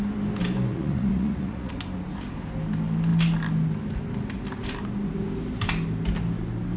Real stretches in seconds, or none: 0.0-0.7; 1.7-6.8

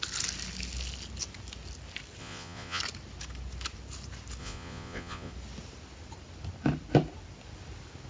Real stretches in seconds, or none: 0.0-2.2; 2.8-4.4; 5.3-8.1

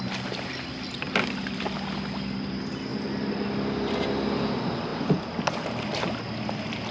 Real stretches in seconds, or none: 0.0-6.9